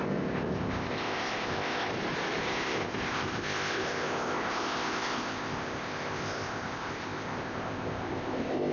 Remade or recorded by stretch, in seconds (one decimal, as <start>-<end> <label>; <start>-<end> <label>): 0.0-1.9 remade; 1.9-2.4 recorded; 2.4-8.7 remade